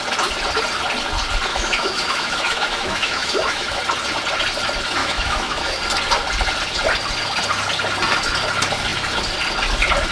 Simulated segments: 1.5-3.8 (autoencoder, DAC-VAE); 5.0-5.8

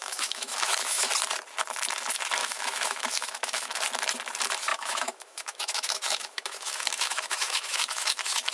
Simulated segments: 0.0-1.1 (autoencoder, DAC-VAE); 2.4-3.8; 4.7-8.5

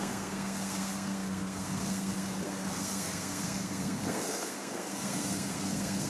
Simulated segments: 0.0-6.1 (codec, SNAC)